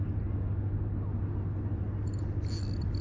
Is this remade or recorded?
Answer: recorded